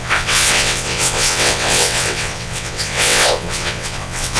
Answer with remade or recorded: remade